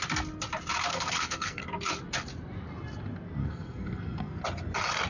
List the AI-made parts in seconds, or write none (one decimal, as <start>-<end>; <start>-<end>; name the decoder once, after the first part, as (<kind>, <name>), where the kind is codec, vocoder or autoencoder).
0.9-1.6 (codec, SNAC); 3.4-4.4